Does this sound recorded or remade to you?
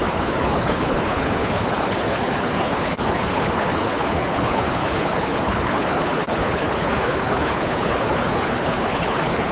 remade